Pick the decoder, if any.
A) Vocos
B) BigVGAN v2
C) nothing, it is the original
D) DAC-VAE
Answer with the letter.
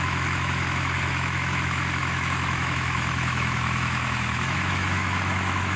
D